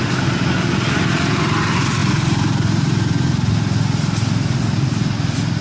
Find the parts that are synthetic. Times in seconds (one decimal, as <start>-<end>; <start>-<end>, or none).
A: none